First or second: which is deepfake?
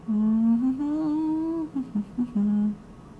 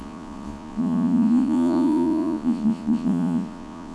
second